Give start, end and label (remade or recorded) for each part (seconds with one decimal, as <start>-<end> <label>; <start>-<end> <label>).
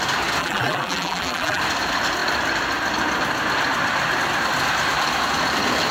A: 0.0-0.4 recorded; 0.4-1.6 remade; 1.6-5.9 recorded